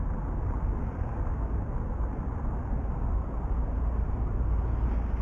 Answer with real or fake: real